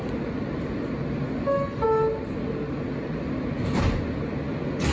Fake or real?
real